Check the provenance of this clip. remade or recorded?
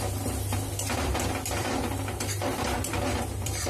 remade